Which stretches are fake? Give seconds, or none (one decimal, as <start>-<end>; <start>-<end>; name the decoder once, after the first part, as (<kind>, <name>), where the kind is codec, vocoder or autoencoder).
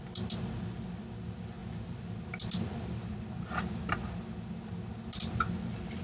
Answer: none